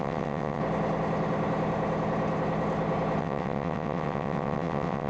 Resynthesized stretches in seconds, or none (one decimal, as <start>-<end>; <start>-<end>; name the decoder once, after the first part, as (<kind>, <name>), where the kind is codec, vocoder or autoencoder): 0.0-0.6 (vocoder, WaveNeXt); 3.2-5.1